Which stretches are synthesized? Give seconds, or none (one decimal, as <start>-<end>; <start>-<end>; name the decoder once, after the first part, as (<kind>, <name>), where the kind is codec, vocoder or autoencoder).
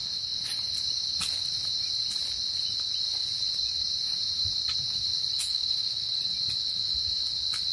5.4-6.1 (autoencoder, DAC-VAE)